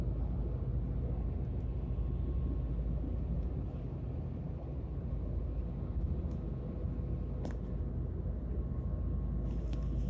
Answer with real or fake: real